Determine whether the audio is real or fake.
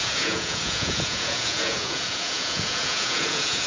fake